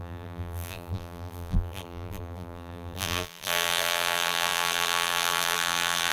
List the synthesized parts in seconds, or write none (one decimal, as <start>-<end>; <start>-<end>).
0.0-6.1